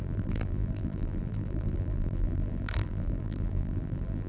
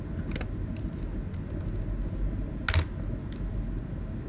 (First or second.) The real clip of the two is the second